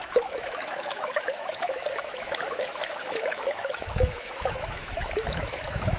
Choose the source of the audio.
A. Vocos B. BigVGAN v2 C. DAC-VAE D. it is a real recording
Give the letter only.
C